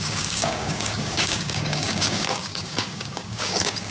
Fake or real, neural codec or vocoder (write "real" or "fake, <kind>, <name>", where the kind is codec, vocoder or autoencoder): fake, codec, DAC